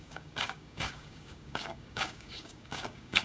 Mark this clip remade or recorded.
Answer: remade